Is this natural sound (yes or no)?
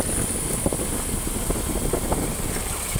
yes